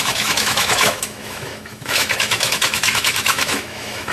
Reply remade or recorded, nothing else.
remade